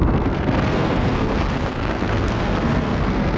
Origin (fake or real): fake